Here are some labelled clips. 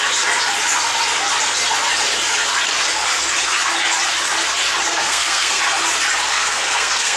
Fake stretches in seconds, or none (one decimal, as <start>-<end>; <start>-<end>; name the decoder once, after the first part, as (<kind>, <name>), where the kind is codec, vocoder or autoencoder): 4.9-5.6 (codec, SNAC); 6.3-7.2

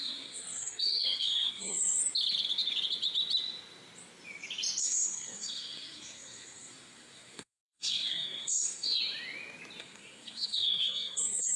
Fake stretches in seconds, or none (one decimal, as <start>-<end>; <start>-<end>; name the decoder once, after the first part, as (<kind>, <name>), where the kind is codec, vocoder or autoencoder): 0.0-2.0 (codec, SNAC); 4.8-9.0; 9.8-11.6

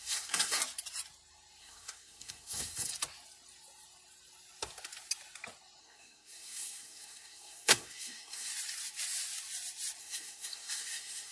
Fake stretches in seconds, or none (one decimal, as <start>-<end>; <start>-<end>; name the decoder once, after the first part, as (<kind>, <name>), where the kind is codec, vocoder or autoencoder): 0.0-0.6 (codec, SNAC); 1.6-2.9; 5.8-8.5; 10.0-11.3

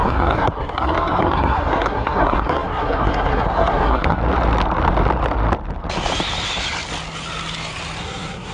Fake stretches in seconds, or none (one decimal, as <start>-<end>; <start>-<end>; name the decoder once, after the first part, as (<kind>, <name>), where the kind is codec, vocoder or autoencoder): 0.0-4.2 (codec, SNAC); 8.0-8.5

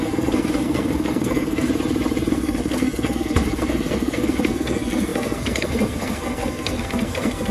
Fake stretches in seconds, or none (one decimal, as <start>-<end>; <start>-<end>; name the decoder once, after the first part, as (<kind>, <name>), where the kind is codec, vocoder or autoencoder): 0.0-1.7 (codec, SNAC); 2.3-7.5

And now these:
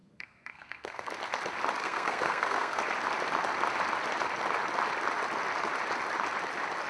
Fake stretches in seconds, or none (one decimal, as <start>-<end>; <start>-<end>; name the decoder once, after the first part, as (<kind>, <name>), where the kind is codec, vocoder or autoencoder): 0.0-1.1 (codec, SNAC); 1.8-2.8

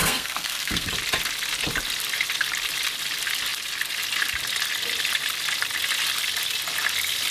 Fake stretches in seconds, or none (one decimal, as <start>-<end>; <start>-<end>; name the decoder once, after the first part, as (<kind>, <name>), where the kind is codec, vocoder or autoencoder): 0.0-0.9 (codec, SNAC)

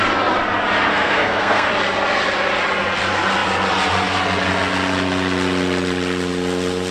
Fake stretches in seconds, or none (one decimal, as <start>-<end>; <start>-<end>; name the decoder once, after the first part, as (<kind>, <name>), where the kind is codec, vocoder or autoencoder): 0.9-1.7 (codec, SNAC)